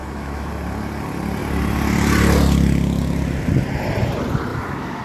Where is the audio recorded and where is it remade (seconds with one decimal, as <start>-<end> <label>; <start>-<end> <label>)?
0.0-0.5 remade; 0.5-4.5 recorded; 4.5-5.0 remade

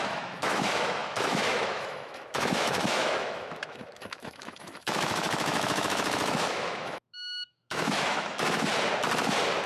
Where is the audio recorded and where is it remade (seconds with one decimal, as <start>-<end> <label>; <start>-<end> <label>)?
0.0-8.7 remade; 8.7-9.7 recorded

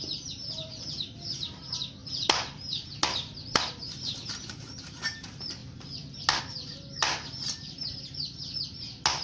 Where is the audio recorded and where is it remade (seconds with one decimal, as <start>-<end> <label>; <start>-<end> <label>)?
0.0-9.2 recorded

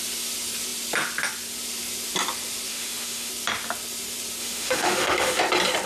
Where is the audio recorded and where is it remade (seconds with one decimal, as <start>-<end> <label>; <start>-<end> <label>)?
0.0-2.7 recorded; 2.7-3.3 remade; 3.3-4.4 recorded; 4.4-5.4 remade; 5.4-5.9 recorded

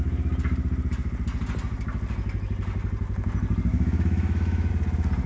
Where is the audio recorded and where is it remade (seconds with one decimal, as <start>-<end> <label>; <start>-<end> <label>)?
0.0-3.7 recorded; 3.7-4.7 remade; 4.7-5.3 recorded

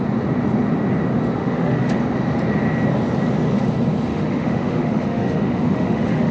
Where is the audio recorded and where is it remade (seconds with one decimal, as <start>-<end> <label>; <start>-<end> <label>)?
0.0-1.4 recorded; 1.4-2.0 remade; 2.0-4.1 recorded; 4.1-6.3 remade

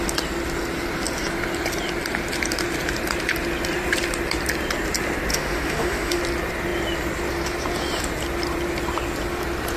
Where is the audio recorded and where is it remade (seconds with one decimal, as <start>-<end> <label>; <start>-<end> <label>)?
0.0-5.3 recorded; 5.3-6.2 remade; 6.2-9.8 recorded

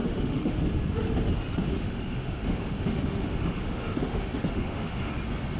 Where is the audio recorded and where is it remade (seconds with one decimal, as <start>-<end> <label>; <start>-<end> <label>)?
0.0-0.6 remade; 0.6-1.7 recorded; 1.7-5.1 remade; 5.1-5.6 recorded